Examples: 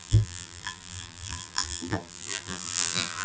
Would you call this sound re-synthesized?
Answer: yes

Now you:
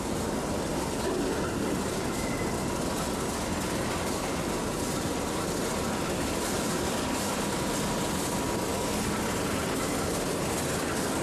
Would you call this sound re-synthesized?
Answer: no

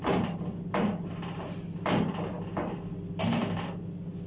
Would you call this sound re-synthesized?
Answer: no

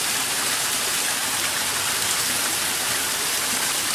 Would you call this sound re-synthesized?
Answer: yes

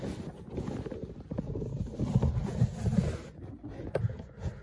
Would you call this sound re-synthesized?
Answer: no